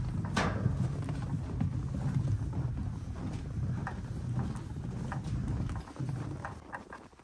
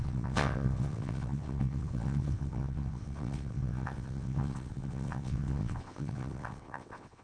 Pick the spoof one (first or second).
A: second